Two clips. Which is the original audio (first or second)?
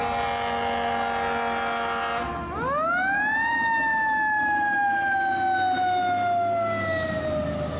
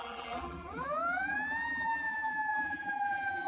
first